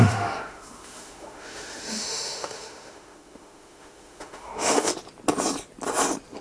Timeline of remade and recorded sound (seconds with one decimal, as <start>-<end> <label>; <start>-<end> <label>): 0.0-4.9 remade; 4.9-6.4 recorded